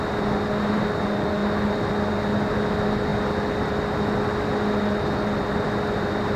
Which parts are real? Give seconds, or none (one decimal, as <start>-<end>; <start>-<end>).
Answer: 0.0-6.4